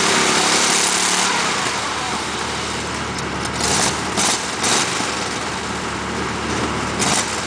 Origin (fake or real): real